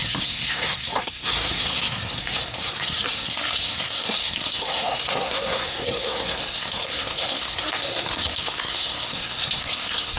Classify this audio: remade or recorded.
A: remade